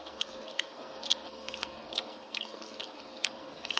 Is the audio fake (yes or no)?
yes